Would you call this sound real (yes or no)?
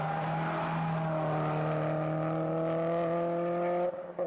yes